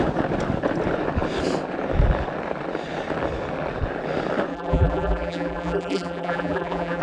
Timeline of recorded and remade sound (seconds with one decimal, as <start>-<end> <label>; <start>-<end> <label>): 0.0-4.5 recorded; 4.5-7.0 remade